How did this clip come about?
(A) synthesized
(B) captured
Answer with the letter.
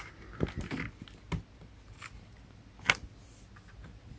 B